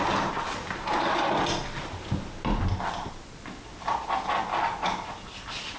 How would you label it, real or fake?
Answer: real